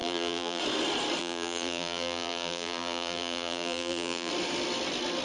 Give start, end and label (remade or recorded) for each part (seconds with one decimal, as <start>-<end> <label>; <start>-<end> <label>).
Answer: 0.0-0.6 remade; 0.6-1.2 recorded; 1.2-4.3 remade; 4.3-5.2 recorded